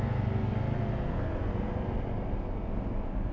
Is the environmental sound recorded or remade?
recorded